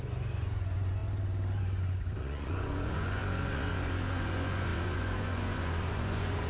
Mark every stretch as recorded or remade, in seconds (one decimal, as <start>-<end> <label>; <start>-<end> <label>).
0.0-1.0 remade; 1.0-1.6 recorded; 1.6-6.5 remade